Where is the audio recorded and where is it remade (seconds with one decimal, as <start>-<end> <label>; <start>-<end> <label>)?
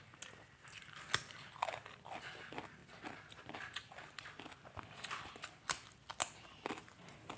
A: 0.0-7.4 recorded